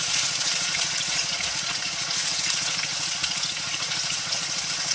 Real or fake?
fake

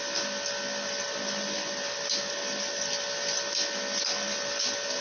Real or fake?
real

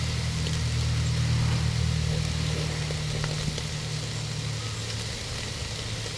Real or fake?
real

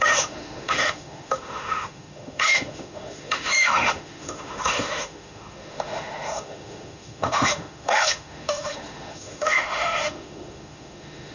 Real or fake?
fake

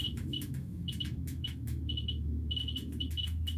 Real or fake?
fake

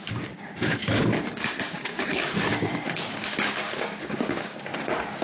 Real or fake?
fake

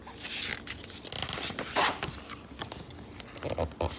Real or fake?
real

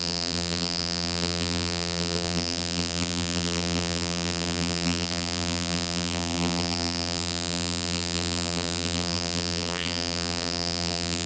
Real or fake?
fake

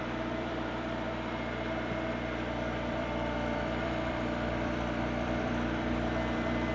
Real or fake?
fake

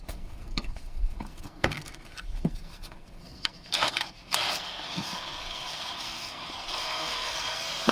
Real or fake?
fake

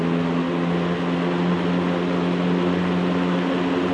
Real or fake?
real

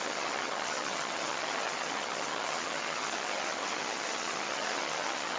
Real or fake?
fake